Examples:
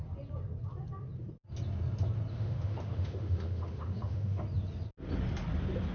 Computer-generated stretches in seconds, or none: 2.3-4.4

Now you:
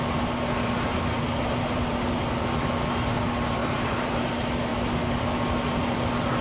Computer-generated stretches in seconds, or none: 0.9-1.8; 3.6-4.3